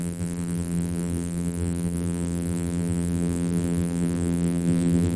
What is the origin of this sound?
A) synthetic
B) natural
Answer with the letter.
A